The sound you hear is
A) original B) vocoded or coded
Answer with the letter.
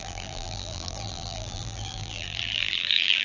B